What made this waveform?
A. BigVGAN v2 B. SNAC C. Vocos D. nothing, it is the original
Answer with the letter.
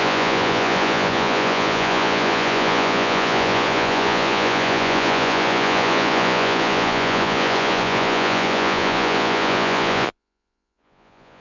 C